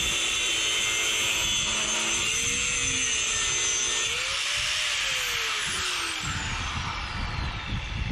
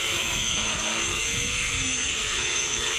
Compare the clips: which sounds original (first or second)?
first